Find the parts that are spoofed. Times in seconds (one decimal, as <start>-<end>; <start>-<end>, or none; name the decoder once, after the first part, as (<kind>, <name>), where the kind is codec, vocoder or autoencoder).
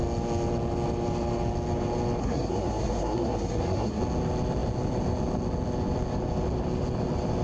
2.2-4.0 (codec, SNAC)